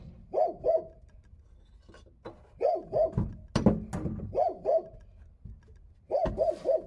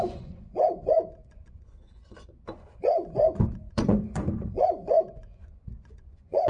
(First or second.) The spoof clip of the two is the second